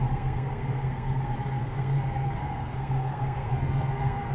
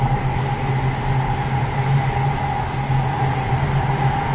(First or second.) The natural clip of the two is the second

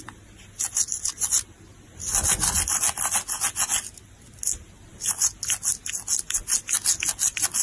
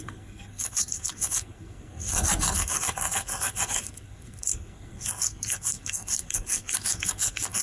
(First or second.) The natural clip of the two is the first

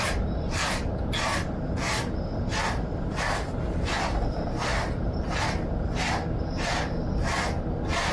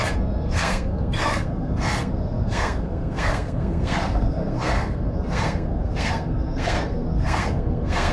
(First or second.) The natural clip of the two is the first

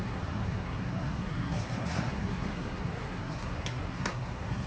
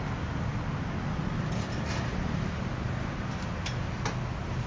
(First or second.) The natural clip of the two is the second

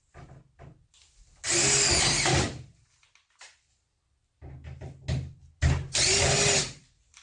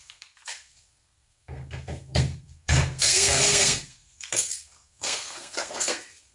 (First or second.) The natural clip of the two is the first